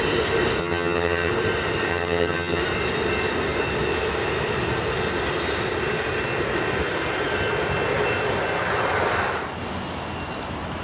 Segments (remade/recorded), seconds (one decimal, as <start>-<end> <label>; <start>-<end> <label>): 0.0-0.6 recorded; 0.6-1.3 remade; 1.3-1.9 recorded; 1.9-2.6 remade; 2.6-10.8 recorded